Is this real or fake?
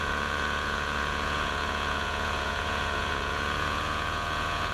fake